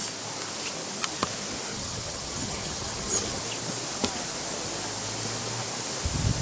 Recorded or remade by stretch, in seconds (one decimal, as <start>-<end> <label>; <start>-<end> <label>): 0.0-1.7 recorded; 1.7-3.4 remade; 3.4-6.4 recorded